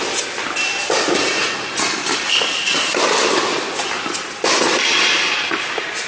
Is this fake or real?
real